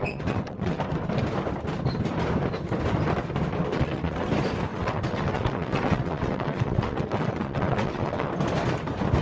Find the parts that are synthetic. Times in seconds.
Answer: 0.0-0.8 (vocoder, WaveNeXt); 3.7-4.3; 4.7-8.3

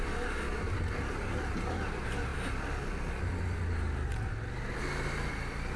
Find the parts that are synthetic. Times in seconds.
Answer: none

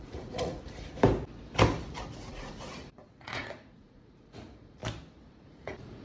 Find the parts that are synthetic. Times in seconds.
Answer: 0.0-0.5 (vocoder, Vocos); 2.3-4.8; 5.3-6.0

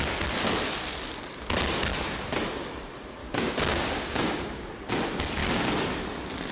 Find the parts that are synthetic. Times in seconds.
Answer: 3.2-4.9 (codec, DAC)